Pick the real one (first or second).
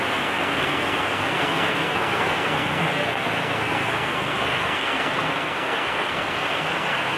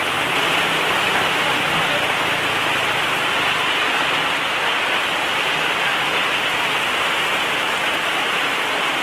second